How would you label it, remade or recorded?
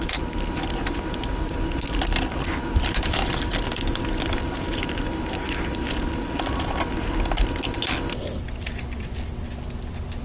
recorded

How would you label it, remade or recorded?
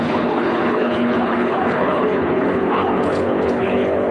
remade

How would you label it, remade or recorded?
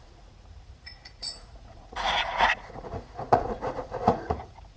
remade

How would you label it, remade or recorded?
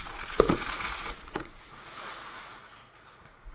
remade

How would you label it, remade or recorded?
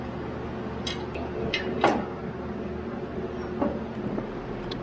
recorded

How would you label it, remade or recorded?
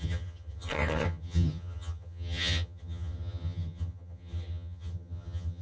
remade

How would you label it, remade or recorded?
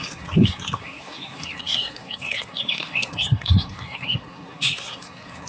remade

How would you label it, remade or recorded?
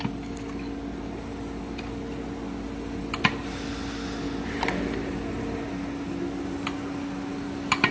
recorded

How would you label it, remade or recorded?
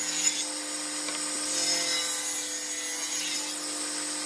recorded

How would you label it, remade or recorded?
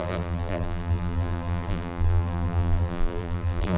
remade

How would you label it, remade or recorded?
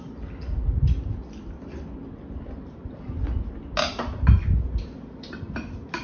recorded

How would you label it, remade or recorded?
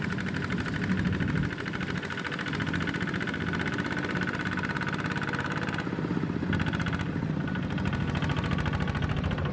recorded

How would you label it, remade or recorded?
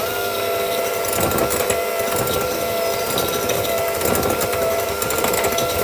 recorded